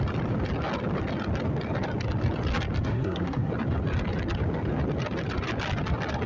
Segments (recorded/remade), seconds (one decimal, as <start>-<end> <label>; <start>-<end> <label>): 0.0-2.9 recorded; 2.9-3.5 remade; 3.5-6.3 recorded